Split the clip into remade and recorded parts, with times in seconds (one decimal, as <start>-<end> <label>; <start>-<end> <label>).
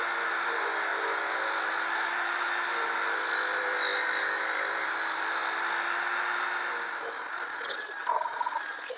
0.0-5.4 remade; 5.4-9.0 recorded